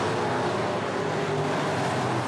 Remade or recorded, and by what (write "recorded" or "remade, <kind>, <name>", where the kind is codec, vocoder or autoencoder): recorded